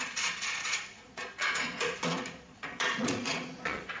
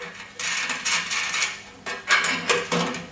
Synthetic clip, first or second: first